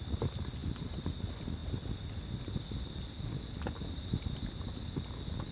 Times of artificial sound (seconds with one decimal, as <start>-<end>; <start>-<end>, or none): none